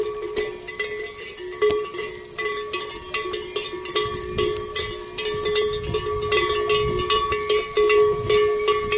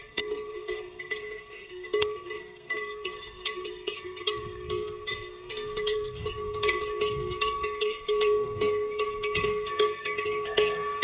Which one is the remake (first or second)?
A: second